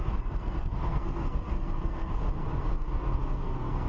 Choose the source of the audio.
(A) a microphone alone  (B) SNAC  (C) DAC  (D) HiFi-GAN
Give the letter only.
B